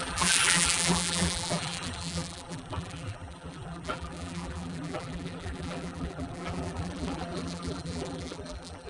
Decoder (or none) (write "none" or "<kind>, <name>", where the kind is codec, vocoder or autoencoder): vocoder, BigVGAN v2